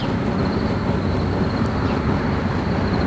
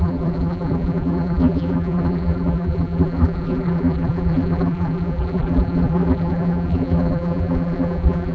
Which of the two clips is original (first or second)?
first